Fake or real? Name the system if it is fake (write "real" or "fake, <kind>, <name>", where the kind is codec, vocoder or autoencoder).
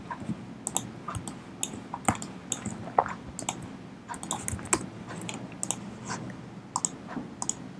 real